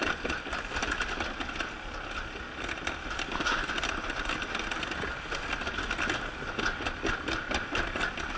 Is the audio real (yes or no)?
yes